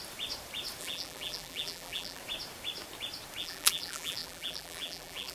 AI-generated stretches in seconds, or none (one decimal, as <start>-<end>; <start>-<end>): 0.8-2.2; 3.4-5.3